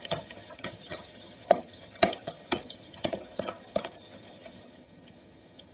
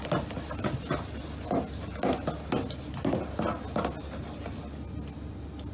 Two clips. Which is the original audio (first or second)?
second